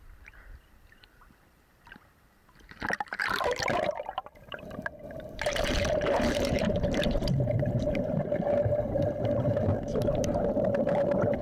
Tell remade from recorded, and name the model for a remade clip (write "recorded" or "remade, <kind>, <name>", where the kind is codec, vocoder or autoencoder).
remade, vocoder, BigVGAN v2